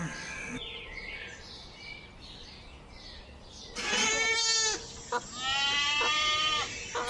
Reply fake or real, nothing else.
real